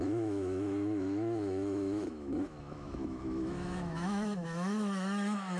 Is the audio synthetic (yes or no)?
yes